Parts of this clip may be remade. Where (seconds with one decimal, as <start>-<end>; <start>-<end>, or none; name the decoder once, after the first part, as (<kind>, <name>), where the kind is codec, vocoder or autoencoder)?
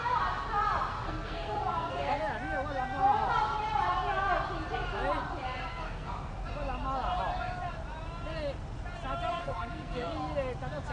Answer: 0.9-2.2 (codec, SNAC); 5.7-6.3; 9.3-10.1